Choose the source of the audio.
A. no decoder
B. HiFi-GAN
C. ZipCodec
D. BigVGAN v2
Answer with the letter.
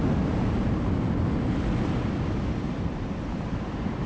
A